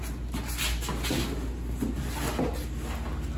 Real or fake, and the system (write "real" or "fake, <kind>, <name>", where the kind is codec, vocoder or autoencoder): real